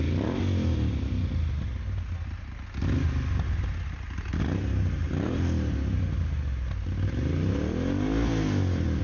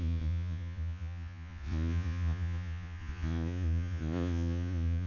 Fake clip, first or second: second